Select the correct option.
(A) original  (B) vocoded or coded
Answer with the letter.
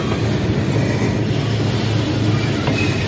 A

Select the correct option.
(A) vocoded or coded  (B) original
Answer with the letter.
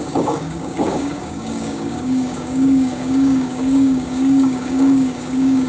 A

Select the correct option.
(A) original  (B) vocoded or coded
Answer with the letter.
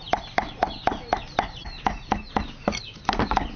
A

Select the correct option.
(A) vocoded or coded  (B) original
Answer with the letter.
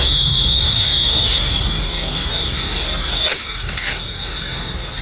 A